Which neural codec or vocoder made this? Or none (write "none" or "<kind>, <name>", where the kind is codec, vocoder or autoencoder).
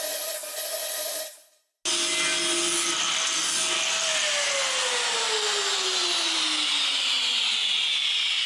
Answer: none